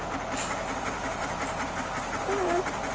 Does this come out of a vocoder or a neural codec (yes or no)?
no